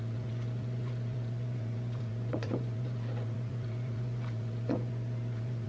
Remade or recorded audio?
remade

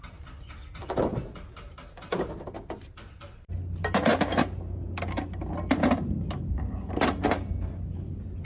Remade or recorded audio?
recorded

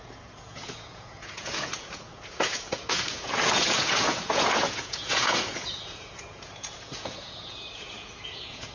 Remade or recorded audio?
remade